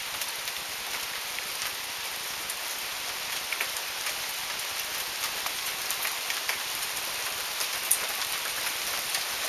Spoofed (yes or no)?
no